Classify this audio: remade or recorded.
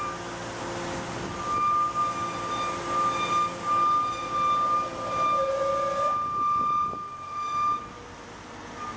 recorded